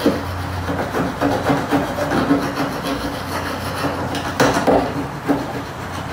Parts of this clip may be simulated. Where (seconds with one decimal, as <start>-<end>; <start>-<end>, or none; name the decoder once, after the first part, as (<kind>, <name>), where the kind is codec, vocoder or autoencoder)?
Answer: 2.9-3.7 (codec, DAC)